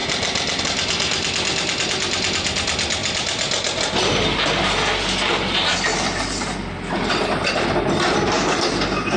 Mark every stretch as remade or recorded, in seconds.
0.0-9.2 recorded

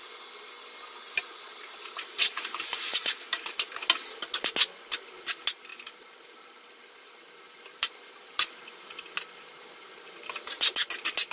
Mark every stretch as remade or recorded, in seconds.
0.0-1.0 recorded; 1.0-3.7 remade; 3.7-5.7 recorded; 5.7-10.6 remade; 10.6-11.3 recorded

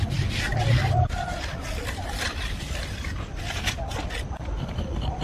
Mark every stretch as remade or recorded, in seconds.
0.0-5.2 recorded

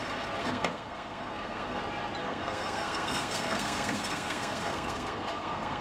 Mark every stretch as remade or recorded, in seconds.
0.0-0.4 recorded; 0.4-1.8 remade; 1.8-2.2 recorded; 2.2-5.8 remade

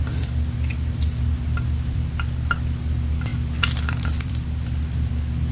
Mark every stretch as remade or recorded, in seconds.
0.0-5.5 remade